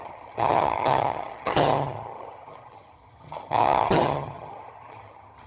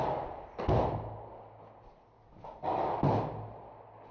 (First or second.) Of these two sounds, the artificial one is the first